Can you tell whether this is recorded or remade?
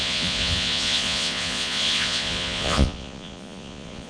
remade